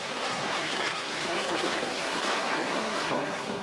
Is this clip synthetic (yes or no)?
yes